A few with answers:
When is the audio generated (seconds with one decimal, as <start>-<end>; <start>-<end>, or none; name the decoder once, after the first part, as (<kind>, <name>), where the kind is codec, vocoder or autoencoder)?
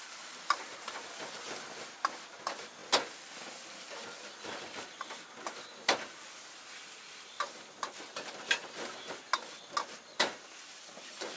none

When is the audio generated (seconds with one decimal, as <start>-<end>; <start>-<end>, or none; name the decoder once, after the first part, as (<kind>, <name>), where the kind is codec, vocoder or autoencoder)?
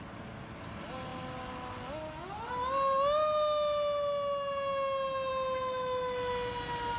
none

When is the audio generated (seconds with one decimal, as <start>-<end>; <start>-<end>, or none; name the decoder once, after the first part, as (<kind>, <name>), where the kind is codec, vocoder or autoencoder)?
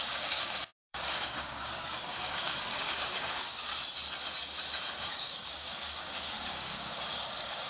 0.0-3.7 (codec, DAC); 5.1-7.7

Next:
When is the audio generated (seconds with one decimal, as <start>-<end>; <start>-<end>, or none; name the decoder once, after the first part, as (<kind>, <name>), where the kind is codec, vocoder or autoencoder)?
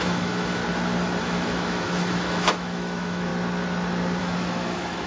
0.0-0.6 (autoencoder, DAC-VAE); 1.2-3.3; 4.2-5.1